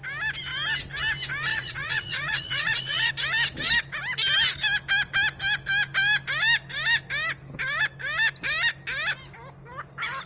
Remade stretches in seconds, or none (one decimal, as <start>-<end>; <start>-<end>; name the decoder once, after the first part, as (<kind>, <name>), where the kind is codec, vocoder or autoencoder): 1.5-3.1 (vocoder, Vocos)